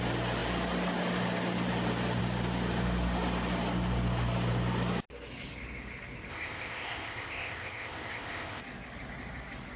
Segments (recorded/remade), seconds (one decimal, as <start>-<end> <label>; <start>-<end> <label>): 0.0-6.3 recorded; 6.3-8.6 remade; 8.6-9.8 recorded